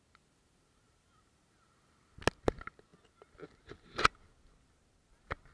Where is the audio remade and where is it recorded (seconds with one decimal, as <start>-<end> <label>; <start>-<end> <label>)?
0.0-5.5 recorded